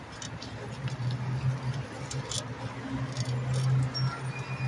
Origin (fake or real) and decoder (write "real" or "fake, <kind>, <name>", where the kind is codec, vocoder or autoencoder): real